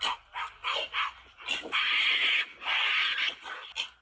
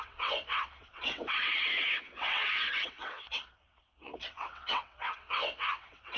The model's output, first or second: second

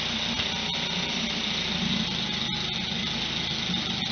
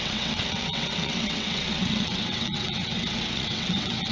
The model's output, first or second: second